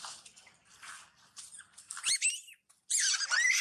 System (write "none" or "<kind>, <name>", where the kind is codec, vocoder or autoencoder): none